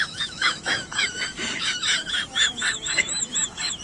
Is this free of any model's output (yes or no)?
no